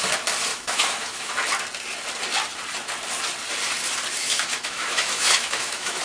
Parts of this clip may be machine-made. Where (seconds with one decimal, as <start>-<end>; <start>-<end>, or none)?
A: 0.5-1.3; 4.2-6.0